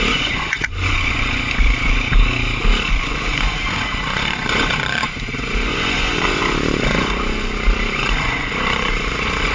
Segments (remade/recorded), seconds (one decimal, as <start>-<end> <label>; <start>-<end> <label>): 0.0-2.1 remade; 2.1-2.9 recorded; 2.9-9.5 remade